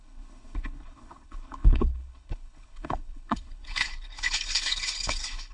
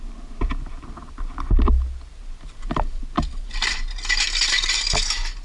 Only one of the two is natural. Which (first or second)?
second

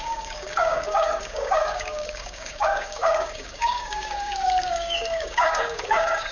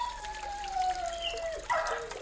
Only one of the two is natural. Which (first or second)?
second